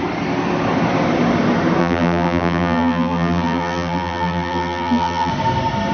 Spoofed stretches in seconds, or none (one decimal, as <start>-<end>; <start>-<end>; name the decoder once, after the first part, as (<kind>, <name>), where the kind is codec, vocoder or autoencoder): 1.8-5.3 (vocoder, BigVGAN v2)